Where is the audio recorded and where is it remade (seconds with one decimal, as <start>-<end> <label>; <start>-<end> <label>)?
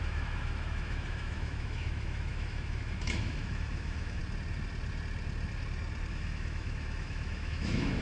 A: 0.0-4.2 remade; 4.2-6.1 recorded; 6.1-8.0 remade